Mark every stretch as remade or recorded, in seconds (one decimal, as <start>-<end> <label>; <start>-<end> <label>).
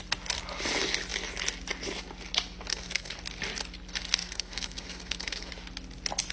0.0-2.7 recorded; 2.7-3.2 remade; 3.2-4.2 recorded; 4.2-5.5 remade; 5.5-6.3 recorded